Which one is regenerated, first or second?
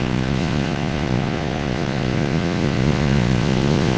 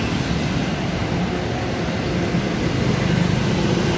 first